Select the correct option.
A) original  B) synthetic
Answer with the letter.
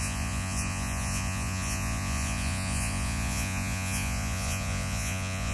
B